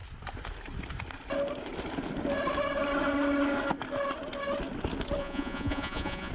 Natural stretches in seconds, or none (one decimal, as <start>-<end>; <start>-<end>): 0.0-5.2

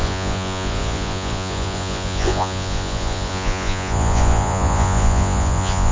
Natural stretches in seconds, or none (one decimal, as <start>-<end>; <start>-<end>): none

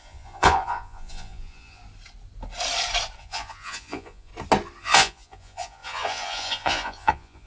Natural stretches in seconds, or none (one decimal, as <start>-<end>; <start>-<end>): 1.8-3.2; 4.3-4.8